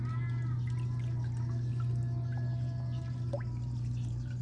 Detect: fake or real real